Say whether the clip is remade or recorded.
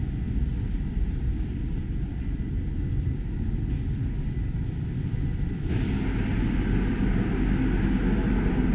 recorded